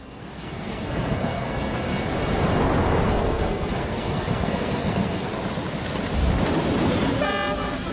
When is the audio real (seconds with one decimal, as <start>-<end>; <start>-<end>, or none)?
1.9-3.0; 5.3-7.9